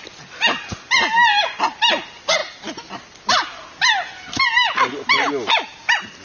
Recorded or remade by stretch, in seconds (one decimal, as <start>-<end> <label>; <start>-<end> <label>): 0.0-6.2 recorded